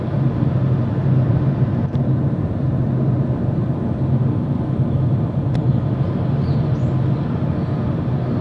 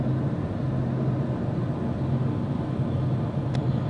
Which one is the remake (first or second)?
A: first